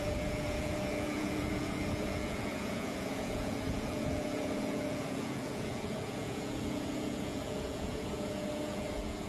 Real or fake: fake